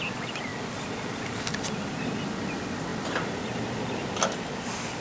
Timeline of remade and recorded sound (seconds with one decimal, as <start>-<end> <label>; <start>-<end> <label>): 0.0-5.0 recorded